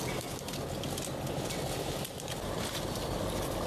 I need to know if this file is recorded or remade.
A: recorded